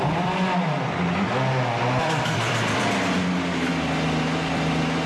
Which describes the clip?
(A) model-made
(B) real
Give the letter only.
A